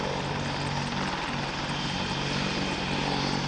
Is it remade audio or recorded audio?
recorded